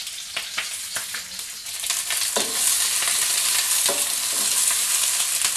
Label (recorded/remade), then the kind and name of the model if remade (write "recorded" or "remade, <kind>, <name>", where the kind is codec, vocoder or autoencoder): recorded